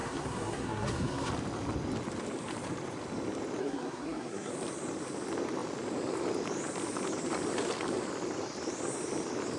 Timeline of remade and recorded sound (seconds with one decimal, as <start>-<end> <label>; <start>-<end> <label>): 0.0-1.3 remade; 1.3-3.6 recorded; 3.6-4.5 remade; 4.5-9.6 recorded